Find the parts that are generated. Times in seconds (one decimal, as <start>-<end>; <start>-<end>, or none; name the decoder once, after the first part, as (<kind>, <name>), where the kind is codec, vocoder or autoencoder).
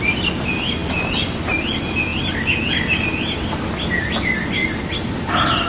none